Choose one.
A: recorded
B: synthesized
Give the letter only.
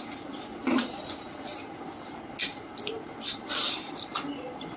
A